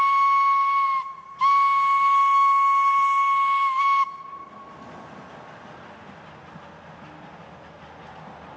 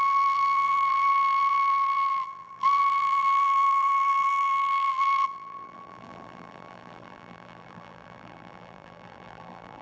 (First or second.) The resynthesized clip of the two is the second